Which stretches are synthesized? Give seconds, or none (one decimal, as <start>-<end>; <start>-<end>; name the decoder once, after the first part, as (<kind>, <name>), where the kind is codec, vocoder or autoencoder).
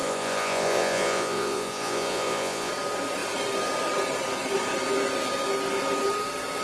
0.0-2.7 (vocoder, Vocos)